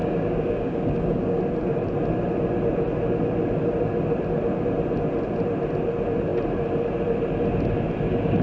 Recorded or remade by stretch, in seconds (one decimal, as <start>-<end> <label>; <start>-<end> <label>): 0.0-1.4 remade; 1.4-8.4 recorded